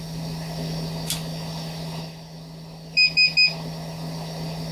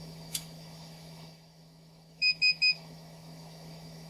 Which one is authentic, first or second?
first